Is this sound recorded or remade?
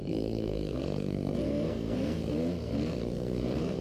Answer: remade